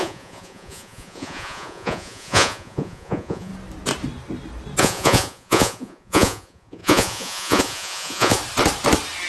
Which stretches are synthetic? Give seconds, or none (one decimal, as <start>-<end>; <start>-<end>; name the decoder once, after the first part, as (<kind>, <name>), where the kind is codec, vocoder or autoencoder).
0.0-3.5 (vocoder, Vocos); 4.8-8.4